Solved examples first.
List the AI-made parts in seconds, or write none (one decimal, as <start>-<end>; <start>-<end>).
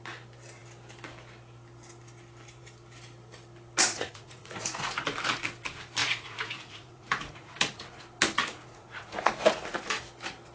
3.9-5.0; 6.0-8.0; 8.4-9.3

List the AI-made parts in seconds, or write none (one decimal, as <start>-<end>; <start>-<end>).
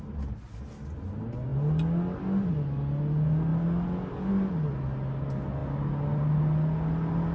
none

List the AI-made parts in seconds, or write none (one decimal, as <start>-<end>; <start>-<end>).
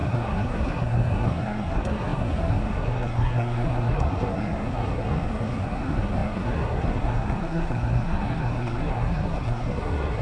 0.0-10.2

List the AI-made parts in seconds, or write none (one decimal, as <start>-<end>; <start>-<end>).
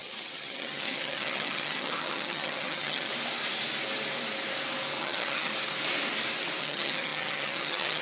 0.0-3.1; 5.0-5.5; 6.6-8.0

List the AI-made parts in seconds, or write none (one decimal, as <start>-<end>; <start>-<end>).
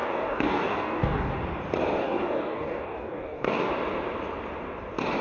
0.0-1.3; 2.0-3.7